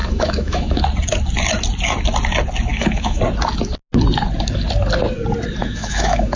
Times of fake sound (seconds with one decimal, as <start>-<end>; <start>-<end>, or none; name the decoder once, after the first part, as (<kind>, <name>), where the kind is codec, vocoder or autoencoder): 0.0-0.8 (autoencoder, DAC-VAE); 2.7-3.2; 5.6-6.4